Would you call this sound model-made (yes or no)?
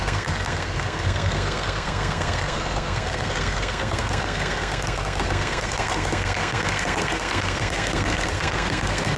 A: yes